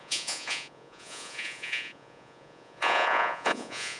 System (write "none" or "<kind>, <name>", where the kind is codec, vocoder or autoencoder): vocoder, Vocos